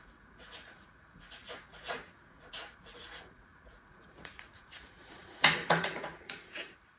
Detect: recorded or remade remade